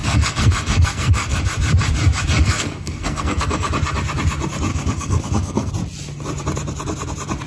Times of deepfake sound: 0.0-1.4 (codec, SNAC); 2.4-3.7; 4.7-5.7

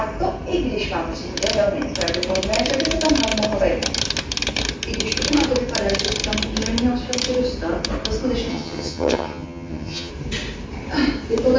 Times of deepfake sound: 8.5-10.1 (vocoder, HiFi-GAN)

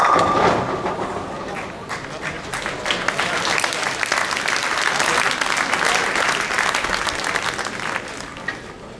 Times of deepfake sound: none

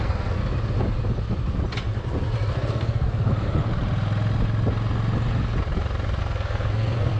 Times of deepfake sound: 0.0-0.4 (codec, SNAC); 2.5-3.7; 6.2-7.2

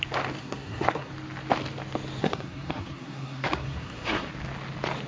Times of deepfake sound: 0.4-1.1 (codec, SNAC); 2.2-4.3

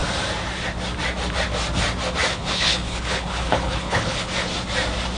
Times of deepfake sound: 2.3-4.3 (codec, HILCodec)

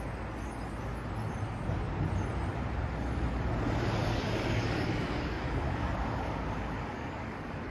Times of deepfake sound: 4.0-7.7 (codec, DAC)